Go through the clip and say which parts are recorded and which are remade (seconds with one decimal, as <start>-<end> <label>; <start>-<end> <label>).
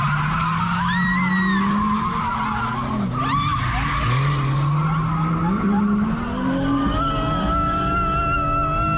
0.0-9.0 recorded